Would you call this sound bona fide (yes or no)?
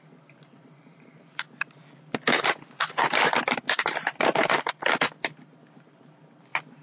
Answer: yes